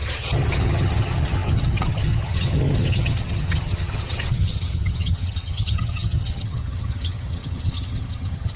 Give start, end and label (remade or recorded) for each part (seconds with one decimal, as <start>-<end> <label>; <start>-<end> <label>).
0.0-8.6 remade

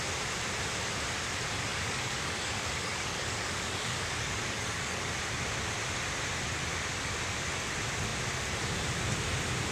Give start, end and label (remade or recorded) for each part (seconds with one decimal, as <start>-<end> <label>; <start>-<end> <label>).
0.0-1.7 recorded; 1.7-5.1 remade; 5.1-9.7 recorded

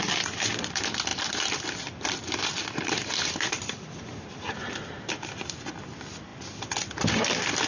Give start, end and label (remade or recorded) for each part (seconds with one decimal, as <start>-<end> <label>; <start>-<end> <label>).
0.0-7.7 remade

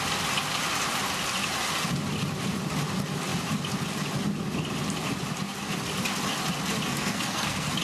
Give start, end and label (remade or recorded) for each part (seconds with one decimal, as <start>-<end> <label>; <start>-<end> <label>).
0.0-6.9 recorded; 6.9-7.8 remade

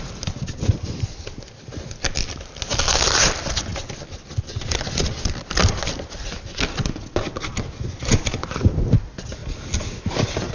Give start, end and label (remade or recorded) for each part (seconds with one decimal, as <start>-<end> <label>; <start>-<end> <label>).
0.0-10.5 recorded